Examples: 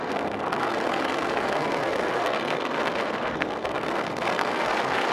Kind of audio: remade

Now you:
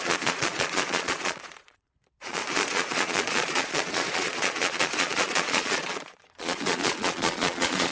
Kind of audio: remade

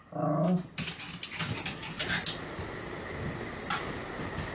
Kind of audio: recorded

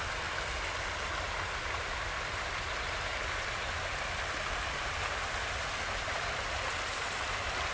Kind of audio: recorded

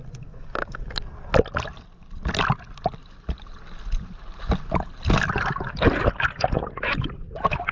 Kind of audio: recorded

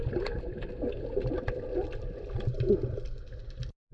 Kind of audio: recorded